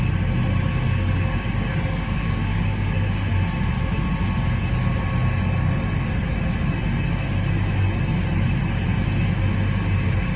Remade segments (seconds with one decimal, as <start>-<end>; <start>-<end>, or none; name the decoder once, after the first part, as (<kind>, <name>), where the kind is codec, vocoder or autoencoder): 0.7-3.3 (codec, DAC)